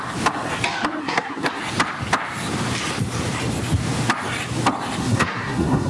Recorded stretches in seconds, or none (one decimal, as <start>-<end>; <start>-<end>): 0.0-1.0; 1.6-5.0